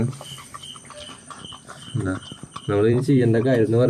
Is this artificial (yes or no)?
yes